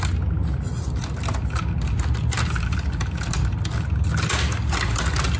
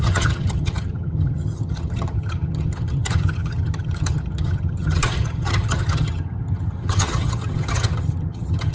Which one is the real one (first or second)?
first